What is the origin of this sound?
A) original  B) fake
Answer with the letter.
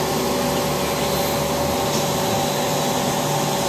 A